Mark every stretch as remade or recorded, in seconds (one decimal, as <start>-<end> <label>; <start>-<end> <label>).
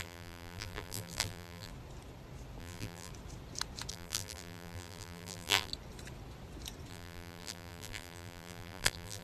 0.0-1.7 remade; 1.7-2.6 recorded; 2.6-3.1 remade; 3.1-3.9 recorded; 3.9-5.7 remade; 5.7-6.9 recorded; 6.9-9.2 remade